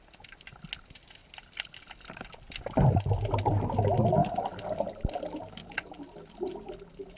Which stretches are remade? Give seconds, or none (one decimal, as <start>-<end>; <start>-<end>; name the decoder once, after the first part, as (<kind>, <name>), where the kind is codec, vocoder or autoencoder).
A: 1.2-1.8 (vocoder, BigVGAN v2); 4.2-4.8; 5.6-6.3

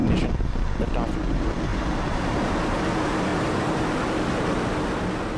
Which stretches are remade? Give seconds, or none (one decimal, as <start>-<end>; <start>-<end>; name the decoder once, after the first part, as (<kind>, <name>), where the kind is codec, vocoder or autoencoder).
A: 1.7-2.5 (vocoder, BigVGAN v2); 3.3-4.8

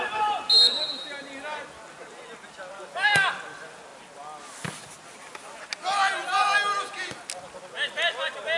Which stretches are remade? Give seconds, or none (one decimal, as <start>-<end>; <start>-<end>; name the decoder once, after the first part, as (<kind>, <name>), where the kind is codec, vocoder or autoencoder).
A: none

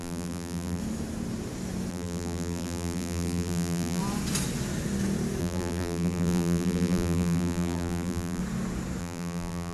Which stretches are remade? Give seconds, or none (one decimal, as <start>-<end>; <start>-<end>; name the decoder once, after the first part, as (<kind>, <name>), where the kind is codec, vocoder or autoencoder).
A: 0.0-0.8 (vocoder, BigVGAN v2); 1.9-4.0; 5.4-8.4; 9.0-9.7